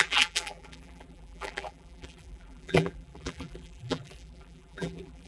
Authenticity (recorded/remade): remade